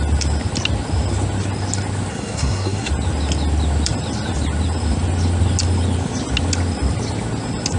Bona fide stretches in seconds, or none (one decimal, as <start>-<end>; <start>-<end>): 0.0-2.1; 2.9-7.8